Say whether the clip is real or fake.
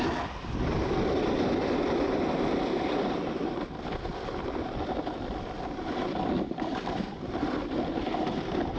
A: fake